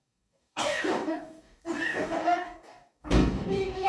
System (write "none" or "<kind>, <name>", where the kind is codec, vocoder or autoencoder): codec, DAC